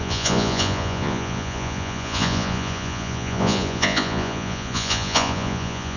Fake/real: fake